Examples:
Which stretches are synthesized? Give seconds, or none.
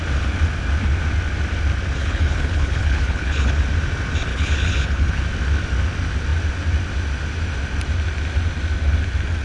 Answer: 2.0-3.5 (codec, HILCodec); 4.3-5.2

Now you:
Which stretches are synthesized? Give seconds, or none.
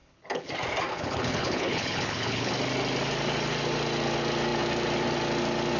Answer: 0.0-0.5 (codec, HILCodec); 0.9-2.5